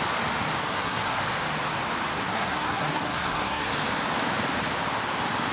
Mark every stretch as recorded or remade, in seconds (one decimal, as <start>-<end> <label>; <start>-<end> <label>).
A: 0.0-0.6 recorded; 0.6-1.2 remade; 1.2-2.2 recorded; 2.2-3.7 remade; 3.7-5.5 recorded